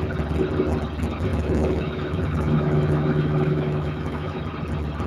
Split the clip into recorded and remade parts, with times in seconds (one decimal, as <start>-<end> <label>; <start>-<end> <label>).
0.0-1.3 recorded; 1.3-4.4 remade; 4.4-5.1 recorded